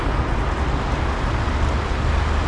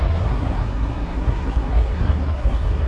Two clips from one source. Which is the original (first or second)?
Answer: first